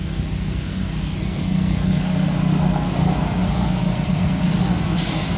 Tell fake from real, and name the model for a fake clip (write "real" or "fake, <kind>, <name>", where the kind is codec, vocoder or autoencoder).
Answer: fake, codec, SNAC